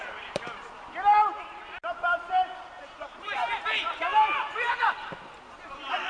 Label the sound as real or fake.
real